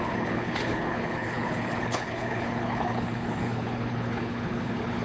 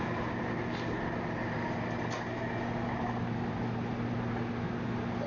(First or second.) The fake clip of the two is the first